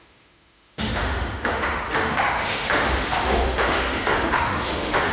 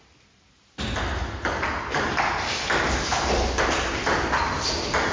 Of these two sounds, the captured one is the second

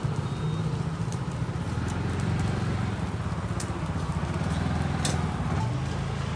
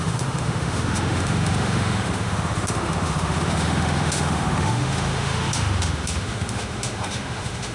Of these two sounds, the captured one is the first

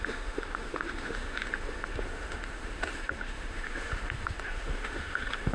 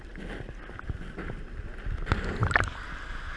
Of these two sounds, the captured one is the second